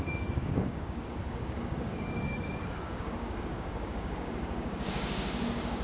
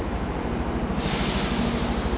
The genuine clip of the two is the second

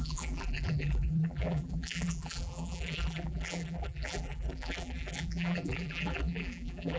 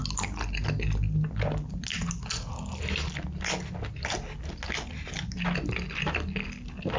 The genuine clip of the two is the second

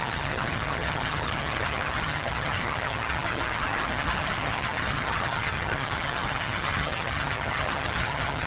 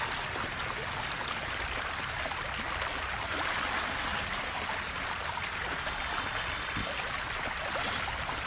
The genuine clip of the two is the second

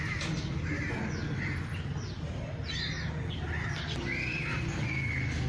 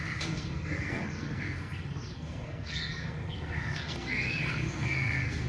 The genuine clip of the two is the first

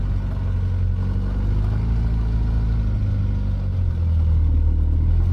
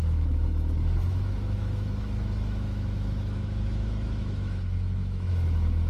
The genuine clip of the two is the first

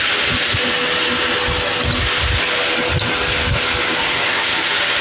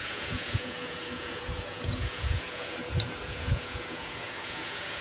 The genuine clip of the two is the first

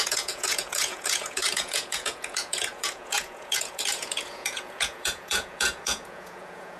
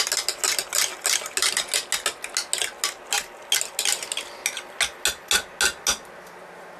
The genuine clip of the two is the second